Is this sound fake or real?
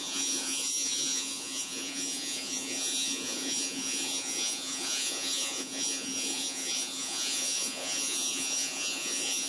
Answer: fake